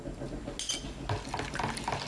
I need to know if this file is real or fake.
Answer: real